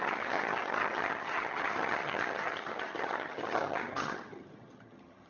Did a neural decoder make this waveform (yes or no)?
yes